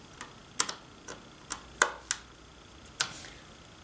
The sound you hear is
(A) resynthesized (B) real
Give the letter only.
B